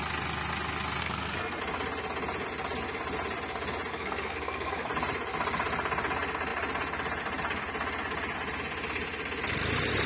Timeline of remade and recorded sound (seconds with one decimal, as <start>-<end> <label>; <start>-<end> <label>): 0.0-1.0 recorded; 1.0-1.6 remade; 1.6-3.9 recorded; 3.9-4.9 remade; 4.9-10.1 recorded